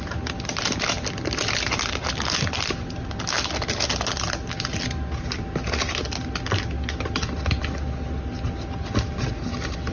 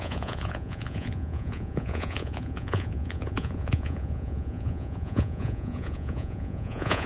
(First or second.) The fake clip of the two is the second